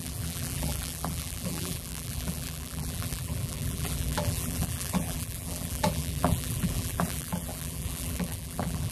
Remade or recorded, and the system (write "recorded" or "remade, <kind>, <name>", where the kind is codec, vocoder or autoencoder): remade, vocoder, BigVGAN v2